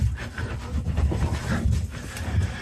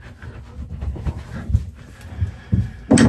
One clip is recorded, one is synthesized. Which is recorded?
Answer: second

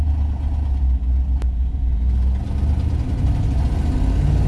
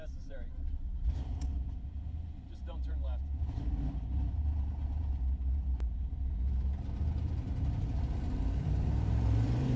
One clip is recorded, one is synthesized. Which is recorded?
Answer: first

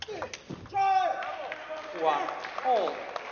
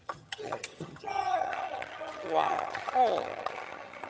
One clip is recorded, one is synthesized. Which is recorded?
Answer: first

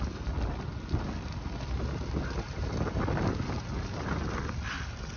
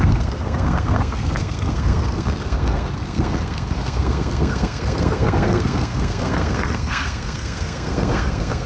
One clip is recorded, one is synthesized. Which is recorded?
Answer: first